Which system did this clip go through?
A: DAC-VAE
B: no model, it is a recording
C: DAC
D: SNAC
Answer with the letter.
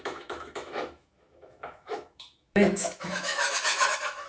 A